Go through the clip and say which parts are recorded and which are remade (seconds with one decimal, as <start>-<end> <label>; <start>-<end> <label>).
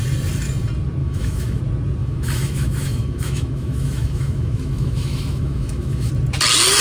0.0-1.0 recorded; 1.0-1.6 remade; 1.6-2.0 recorded; 2.0-6.1 remade; 6.1-6.8 recorded